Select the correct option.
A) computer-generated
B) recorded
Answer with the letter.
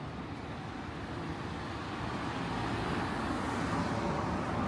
B